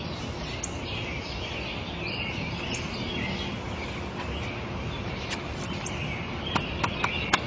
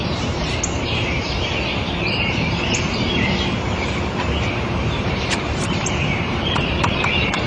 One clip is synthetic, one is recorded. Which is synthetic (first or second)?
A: second